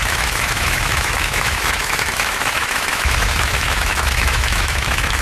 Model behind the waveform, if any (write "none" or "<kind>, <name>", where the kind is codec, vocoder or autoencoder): autoencoder, DAC-VAE